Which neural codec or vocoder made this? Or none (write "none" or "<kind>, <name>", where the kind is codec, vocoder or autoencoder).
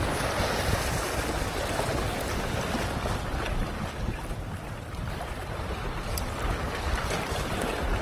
none